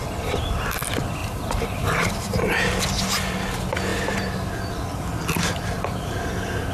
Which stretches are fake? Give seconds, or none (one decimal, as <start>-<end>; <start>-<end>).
1.2-2.6